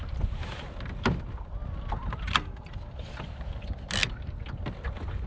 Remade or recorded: recorded